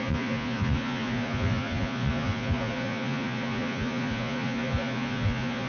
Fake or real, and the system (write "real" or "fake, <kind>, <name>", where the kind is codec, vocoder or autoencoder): fake, vocoder, Vocos